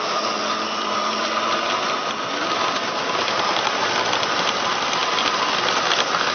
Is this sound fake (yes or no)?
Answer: no